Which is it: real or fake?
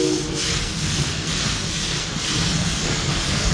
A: fake